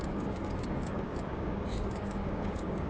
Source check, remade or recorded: remade